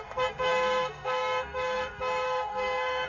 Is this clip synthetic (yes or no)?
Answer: yes